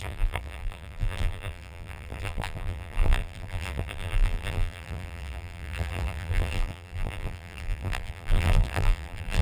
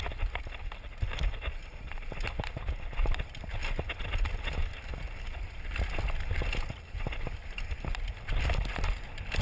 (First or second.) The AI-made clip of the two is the first